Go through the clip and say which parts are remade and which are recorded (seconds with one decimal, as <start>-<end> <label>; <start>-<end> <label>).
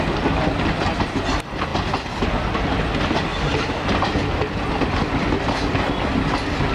0.0-6.7 recorded